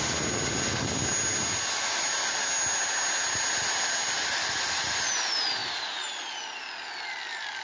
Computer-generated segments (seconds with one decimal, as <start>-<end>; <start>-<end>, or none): none